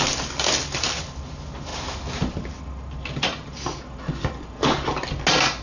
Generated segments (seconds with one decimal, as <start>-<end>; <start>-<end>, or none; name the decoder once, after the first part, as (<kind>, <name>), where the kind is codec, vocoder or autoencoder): none